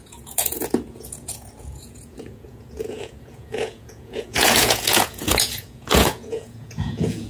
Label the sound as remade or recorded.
remade